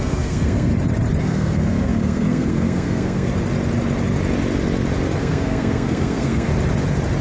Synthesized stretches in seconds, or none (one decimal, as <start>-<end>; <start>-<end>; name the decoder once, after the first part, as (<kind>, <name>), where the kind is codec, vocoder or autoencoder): 0.0-0.7 (codec, SNAC); 1.2-3.3; 5.2-6.5

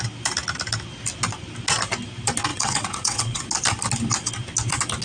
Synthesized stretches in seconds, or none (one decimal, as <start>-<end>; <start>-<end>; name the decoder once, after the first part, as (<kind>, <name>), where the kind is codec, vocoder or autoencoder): 2.5-3.4 (vocoder, WaveNeXt)

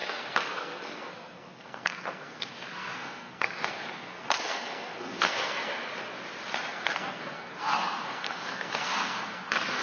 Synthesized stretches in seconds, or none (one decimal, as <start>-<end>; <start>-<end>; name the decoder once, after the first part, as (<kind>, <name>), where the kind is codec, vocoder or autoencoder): 0.0-5.7 (codec, SNAC); 6.7-9.8

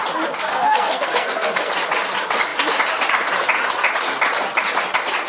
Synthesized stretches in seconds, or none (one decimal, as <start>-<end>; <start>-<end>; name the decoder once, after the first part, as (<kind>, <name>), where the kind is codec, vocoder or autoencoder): 0.5-1.7 (codec, SNAC)

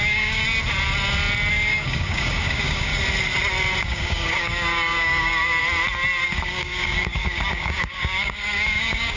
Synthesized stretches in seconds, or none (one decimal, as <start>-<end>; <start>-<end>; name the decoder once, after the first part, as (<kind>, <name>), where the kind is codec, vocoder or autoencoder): 0.0-0.4 (codec, DAC); 1.5-2.9; 3.8-5.6; 6.2-9.2